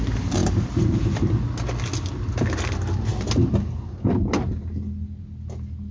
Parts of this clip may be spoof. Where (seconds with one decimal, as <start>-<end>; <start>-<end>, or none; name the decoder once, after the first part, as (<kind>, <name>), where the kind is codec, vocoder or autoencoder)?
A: none